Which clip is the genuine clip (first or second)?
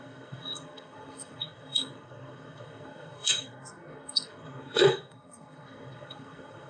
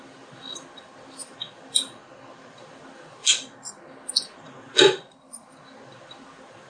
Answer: second